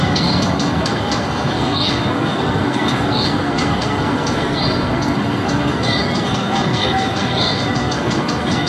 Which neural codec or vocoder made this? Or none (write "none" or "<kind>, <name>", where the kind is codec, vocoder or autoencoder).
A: codec, SNAC